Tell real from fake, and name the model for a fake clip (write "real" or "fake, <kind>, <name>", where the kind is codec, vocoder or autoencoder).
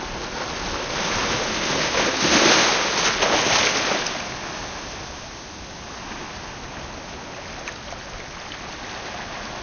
real